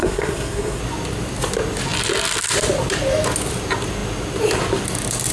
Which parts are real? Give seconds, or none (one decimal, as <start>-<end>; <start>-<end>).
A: 0.8-5.3